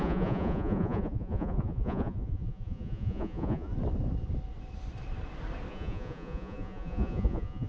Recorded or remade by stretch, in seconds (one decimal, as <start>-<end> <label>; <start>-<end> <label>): 0.0-3.7 remade; 3.7-5.7 recorded; 5.7-7.7 remade